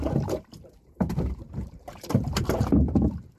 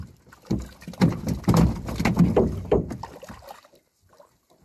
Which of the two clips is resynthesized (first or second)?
first